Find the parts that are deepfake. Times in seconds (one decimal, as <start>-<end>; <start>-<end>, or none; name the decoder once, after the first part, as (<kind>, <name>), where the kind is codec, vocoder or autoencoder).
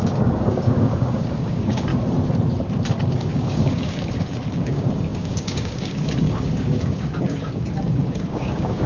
0.0-1.9 (codec, DAC); 3.0-8.9